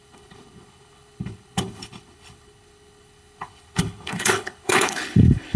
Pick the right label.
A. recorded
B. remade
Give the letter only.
B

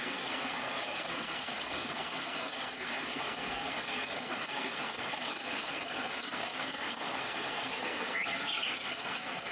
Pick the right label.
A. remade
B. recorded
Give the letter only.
A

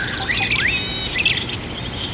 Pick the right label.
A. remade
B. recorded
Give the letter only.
B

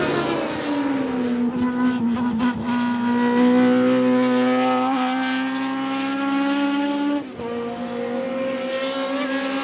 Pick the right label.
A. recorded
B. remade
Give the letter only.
A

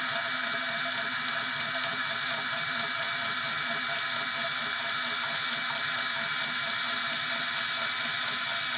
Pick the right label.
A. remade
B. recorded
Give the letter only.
B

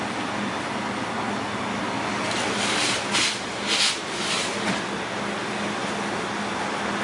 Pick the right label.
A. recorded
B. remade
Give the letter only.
A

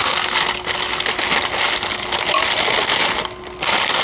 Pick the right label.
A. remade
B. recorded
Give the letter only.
B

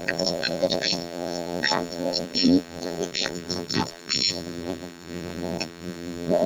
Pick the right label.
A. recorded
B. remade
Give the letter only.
B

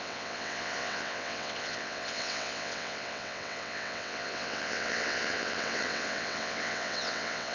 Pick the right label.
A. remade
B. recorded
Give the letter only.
A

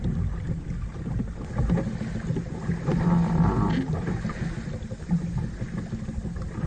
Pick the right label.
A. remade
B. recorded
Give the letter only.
B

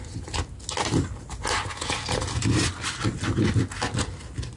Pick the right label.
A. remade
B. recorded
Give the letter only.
B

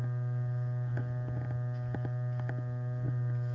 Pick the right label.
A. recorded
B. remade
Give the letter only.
A